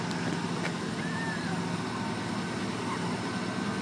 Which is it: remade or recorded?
recorded